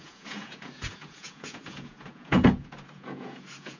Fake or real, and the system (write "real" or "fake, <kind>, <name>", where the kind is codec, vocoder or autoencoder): fake, vocoder, Vocos